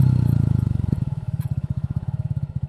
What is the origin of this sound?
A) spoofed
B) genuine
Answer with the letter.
A